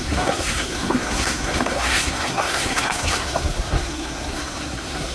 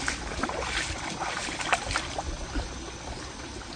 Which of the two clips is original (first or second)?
second